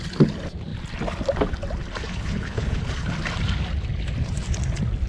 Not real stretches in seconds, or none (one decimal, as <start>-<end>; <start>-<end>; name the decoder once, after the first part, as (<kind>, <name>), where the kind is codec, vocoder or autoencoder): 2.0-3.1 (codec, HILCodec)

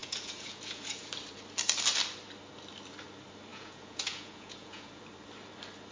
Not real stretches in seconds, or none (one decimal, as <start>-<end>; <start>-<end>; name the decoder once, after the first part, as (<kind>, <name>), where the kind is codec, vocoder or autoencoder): 0.0-1.1 (vocoder, Vocos); 3.5-5.0

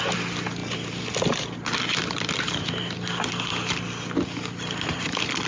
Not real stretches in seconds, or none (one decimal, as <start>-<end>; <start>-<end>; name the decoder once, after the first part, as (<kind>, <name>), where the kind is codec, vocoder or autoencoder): none

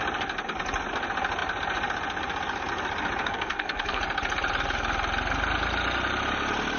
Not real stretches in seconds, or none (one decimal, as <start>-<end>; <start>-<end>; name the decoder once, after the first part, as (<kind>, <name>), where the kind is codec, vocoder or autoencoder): 3.2-4.0 (codec, SNAC)